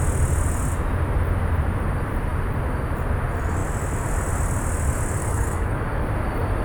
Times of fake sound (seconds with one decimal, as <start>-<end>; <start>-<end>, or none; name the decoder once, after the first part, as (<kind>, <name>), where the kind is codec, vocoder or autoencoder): 5.2-6.1 (codec, DAC)